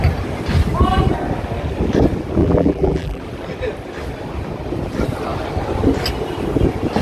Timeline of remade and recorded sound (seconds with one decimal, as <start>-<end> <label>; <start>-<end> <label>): 0.0-2.4 recorded; 2.4-3.2 remade; 3.2-7.0 recorded